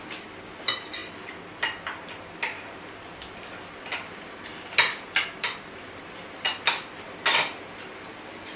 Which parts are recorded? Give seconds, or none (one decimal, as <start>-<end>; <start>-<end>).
1.0-3.0; 4.5-5.8